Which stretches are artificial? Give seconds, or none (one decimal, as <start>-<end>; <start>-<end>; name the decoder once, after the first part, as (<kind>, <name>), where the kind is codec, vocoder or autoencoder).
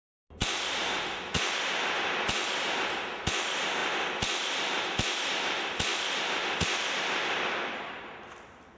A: none